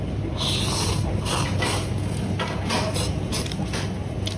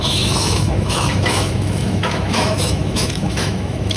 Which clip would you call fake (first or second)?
second